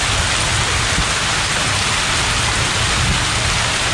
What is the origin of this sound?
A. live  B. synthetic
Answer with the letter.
A